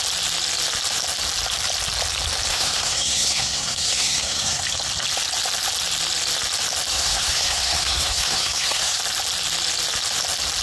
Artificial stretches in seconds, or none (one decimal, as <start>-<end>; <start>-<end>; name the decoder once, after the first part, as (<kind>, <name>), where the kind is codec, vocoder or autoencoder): 2.5-4.6 (codec, SNAC); 6.9-9.0